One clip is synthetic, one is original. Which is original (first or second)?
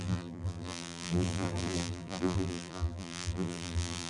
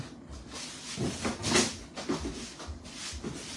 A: second